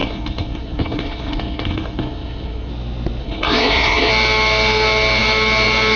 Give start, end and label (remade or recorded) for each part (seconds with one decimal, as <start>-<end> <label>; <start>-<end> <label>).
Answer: 0.0-2.7 remade; 2.7-3.2 recorded; 3.2-4.1 remade; 4.1-6.0 recorded